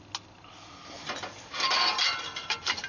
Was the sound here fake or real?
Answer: real